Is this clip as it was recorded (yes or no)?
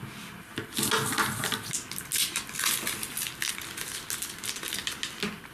yes